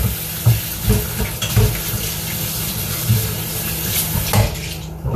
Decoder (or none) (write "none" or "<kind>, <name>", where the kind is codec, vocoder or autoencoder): none